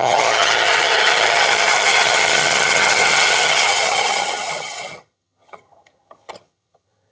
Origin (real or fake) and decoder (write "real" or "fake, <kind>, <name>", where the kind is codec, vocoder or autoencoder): fake, vocoder, HiFi-GAN